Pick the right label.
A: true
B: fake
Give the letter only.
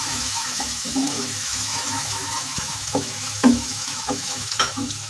B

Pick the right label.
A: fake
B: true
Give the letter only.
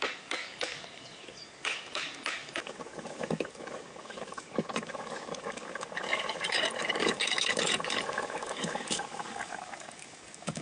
A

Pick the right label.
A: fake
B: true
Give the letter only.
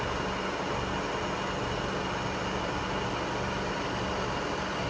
B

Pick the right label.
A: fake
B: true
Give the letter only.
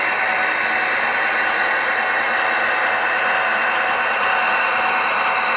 A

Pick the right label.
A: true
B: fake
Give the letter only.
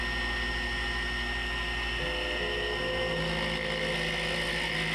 A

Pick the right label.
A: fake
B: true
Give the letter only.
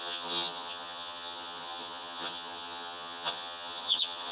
A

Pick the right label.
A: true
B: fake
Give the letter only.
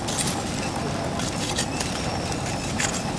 A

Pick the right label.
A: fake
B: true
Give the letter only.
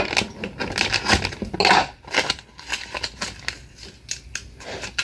B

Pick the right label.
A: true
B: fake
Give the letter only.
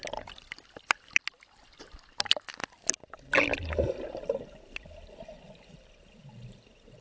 A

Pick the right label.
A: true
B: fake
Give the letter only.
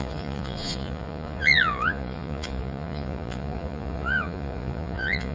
B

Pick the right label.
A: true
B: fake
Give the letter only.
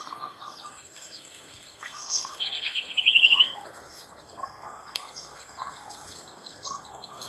B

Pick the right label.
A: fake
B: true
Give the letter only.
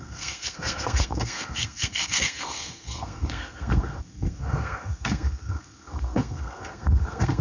A